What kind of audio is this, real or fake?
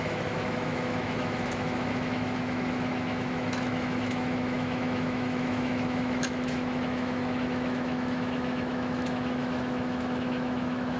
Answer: fake